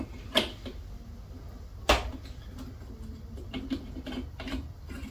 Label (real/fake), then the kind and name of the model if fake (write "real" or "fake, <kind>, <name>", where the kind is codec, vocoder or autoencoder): real